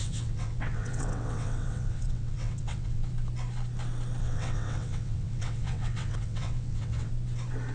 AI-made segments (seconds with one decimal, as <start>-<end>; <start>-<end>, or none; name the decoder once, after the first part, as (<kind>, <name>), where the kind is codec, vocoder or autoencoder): 0.0-3.1 (vocoder, WaveNeXt); 4.2-7.1